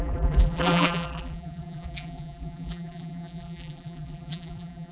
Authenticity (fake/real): fake